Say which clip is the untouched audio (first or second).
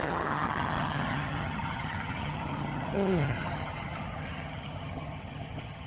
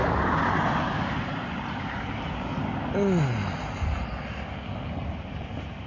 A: second